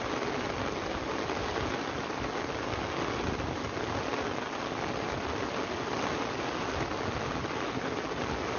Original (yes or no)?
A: yes